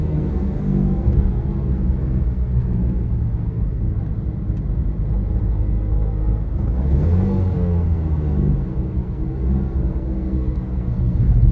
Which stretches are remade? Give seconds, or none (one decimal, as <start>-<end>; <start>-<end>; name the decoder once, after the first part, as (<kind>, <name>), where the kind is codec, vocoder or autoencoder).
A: 0.0-4.1 (codec, SNAC); 5.4-11.5